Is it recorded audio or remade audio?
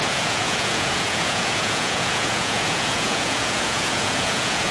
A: remade